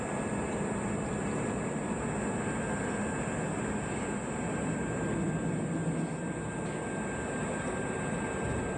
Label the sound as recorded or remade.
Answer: recorded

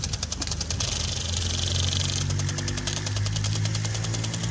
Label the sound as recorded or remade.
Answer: recorded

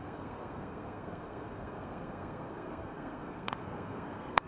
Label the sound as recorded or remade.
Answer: remade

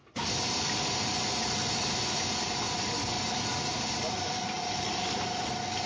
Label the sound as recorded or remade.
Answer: recorded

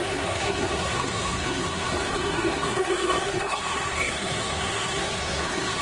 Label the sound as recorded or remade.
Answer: remade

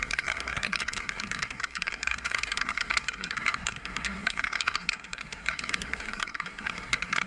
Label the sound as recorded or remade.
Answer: remade